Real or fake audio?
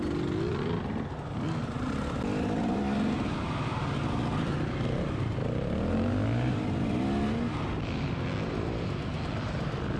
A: real